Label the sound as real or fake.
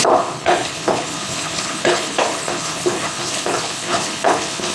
fake